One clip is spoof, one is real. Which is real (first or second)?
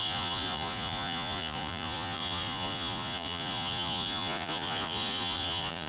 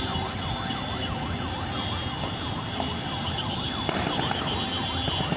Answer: second